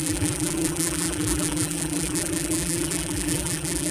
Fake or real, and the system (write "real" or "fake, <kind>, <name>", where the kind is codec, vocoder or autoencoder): fake, vocoder, BigVGAN v2